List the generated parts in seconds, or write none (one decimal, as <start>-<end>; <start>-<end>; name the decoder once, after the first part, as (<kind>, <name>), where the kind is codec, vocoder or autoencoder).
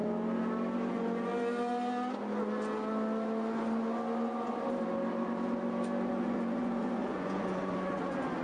0.9-1.3 (vocoder, Vocos); 6.1-8.4